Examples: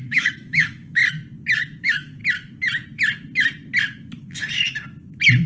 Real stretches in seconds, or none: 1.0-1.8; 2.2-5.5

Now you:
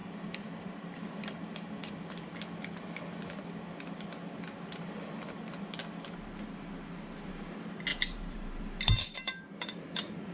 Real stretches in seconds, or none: 2.3-7.9; 8.6-10.3

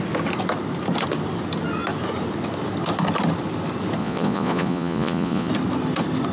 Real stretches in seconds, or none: 0.0-4.0; 5.5-6.3

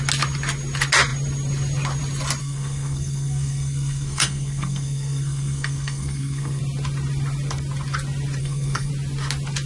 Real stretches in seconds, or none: 0.0-2.4; 6.6-8.4; 8.9-9.7

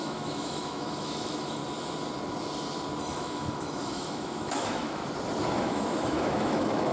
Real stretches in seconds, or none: 1.6-3.0; 5.0-5.6

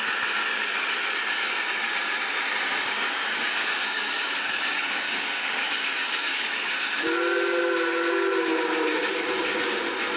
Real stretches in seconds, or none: 0.0-2.7; 6.7-8.9; 9.6-10.2

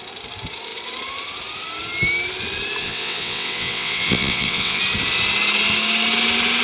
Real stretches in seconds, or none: 0.0-2.8; 4.8-6.6